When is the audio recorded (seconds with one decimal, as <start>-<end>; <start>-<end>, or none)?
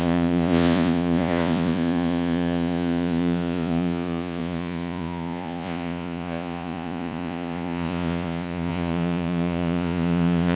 none